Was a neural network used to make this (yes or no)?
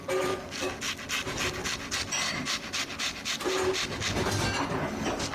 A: no